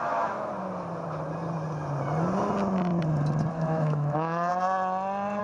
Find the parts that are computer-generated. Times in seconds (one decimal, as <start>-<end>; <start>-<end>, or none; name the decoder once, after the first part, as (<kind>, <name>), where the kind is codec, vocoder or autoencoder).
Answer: 0.0-0.5 (autoencoder, DAC-VAE); 3.5-4.5

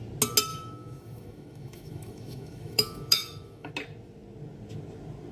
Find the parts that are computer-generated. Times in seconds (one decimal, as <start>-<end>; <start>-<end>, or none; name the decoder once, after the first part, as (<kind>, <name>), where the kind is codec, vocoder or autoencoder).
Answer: 0.5-3.7 (autoencoder, DAC-VAE)

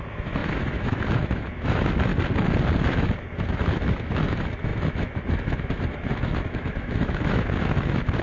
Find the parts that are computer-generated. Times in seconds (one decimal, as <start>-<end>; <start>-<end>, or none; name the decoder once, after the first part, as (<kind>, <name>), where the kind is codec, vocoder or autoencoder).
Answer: 0.0-2.1 (autoencoder, DAC-VAE); 2.8-8.2

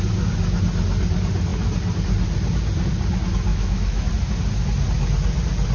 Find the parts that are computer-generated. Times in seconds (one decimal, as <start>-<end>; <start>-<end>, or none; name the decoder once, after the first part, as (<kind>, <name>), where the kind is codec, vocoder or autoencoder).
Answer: 3.5-4.1 (autoencoder, DAC-VAE)